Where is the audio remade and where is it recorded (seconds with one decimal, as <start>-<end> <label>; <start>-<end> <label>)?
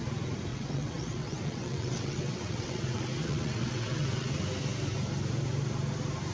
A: 0.0-0.5 recorded; 0.5-4.3 remade; 4.3-6.3 recorded